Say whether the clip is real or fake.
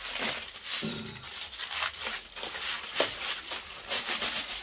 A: real